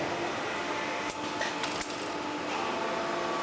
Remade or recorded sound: recorded